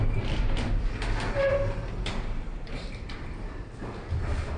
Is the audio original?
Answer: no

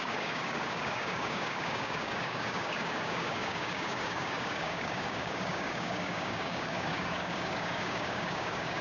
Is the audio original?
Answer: no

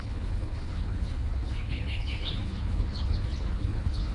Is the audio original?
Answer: no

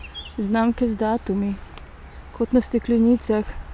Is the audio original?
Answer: yes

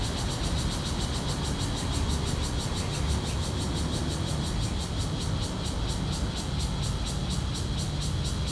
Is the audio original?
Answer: yes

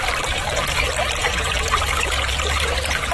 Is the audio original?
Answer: no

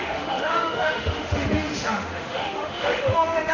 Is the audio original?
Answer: no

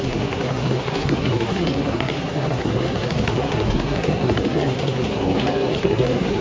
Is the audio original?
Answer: no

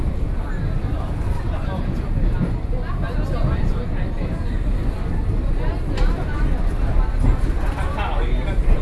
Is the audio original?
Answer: yes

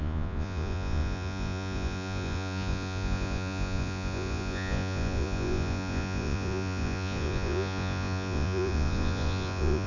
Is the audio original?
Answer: no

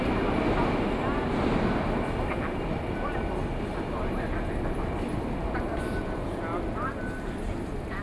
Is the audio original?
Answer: yes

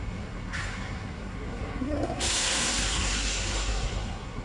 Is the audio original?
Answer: no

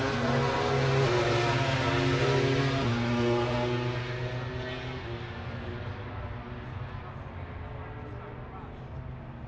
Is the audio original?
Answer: yes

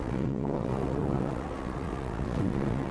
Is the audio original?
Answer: no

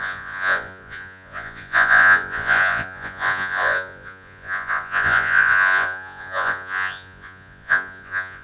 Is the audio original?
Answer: no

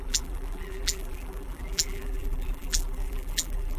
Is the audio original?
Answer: no